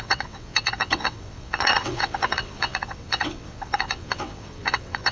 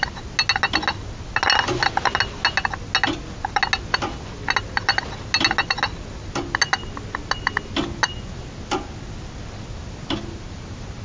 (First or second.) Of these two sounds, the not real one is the first